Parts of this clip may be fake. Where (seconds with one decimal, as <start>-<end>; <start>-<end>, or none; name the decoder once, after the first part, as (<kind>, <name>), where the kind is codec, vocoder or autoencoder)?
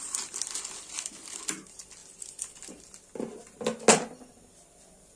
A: none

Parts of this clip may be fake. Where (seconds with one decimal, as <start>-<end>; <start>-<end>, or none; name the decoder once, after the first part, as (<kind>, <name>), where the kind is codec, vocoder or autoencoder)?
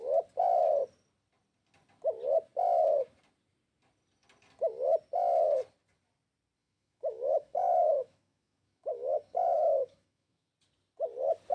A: 6.6-10.5 (autoencoder, DAC-VAE)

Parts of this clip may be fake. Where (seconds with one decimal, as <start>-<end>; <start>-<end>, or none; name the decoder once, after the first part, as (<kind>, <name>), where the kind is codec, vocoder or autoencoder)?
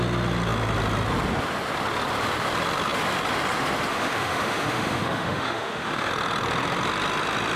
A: 3.9-6.1 (autoencoder, DAC-VAE)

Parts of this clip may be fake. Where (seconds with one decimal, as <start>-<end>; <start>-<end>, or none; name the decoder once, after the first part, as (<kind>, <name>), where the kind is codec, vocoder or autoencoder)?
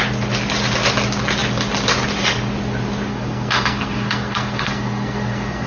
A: 3.1-5.7 (codec, SNAC)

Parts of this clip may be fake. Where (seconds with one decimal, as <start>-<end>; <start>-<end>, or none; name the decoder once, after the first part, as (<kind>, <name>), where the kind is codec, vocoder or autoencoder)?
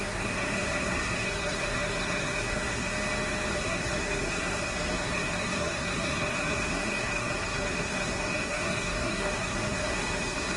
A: 0.0-2.9 (codec, SNAC); 3.5-10.6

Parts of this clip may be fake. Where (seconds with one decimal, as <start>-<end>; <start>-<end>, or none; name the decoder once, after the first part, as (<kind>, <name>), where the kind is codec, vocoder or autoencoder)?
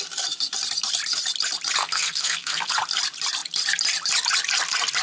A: 1.8-2.7 (codec, SNAC)